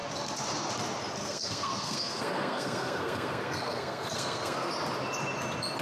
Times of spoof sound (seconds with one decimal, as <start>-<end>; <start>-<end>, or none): 1.2-4.7